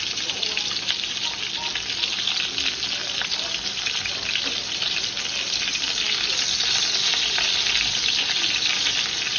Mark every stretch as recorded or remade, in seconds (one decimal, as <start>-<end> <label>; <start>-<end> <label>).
0.0-3.0 recorded; 3.0-5.2 remade; 5.2-7.1 recorded; 7.1-9.0 remade; 9.0-9.4 recorded